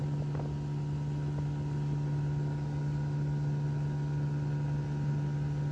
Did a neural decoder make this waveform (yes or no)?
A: no